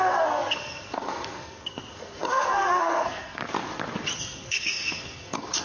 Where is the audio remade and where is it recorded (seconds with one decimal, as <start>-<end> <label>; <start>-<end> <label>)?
0.0-3.4 remade; 3.4-4.2 recorded; 4.2-5.6 remade